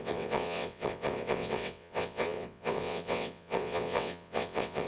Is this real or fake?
fake